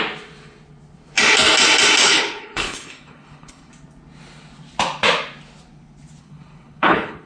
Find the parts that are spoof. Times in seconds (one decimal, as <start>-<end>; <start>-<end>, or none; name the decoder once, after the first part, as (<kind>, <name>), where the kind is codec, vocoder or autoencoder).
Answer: 2.0-3.7 (codec, HILCodec); 6.2-7.3